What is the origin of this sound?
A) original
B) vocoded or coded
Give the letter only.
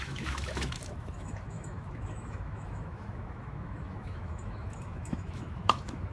B